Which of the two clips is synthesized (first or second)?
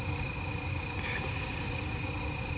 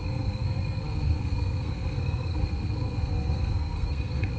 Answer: second